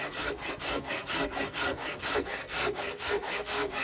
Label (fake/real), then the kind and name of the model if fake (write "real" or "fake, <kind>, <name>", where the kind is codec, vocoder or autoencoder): fake, codec, SNAC